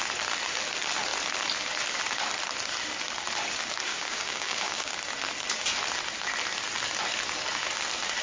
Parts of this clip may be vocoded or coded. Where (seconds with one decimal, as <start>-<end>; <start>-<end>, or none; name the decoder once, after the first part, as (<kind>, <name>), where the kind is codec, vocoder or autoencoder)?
3.9-4.9 (codec, DAC)